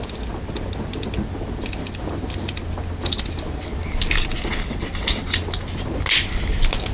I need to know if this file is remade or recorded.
recorded